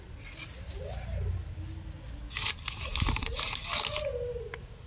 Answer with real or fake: real